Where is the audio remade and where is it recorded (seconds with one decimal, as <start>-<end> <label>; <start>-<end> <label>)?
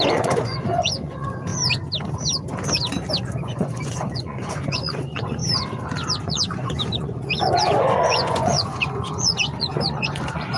0.0-1.5 remade; 1.5-3.2 recorded; 3.2-5.4 remade; 5.4-6.2 recorded; 6.2-10.6 remade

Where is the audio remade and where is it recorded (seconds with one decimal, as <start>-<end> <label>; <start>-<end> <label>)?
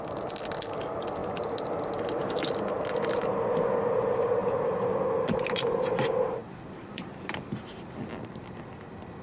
0.0-6.4 recorded; 6.4-7.9 remade; 7.9-9.2 recorded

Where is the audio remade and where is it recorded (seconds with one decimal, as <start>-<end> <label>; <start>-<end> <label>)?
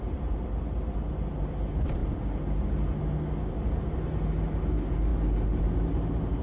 0.0-6.4 recorded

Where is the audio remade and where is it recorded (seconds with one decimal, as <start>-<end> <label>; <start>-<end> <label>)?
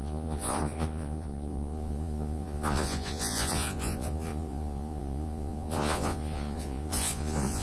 0.0-7.6 remade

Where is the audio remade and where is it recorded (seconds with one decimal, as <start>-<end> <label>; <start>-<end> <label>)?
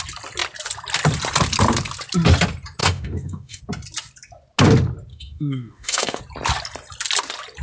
0.0-2.8 recorded; 2.8-3.6 remade; 3.6-5.1 recorded; 5.1-6.2 remade; 6.2-7.6 recorded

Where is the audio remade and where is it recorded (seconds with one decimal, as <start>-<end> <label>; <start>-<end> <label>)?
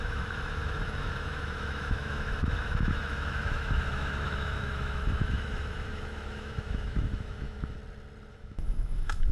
0.0-7.8 remade; 7.8-8.3 recorded; 8.3-9.3 remade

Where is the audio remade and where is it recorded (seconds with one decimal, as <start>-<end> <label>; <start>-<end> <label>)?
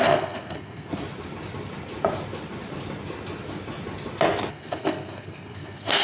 0.0-0.9 remade; 0.9-4.5 recorded; 4.5-6.0 remade